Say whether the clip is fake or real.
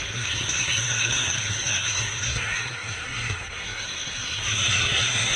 fake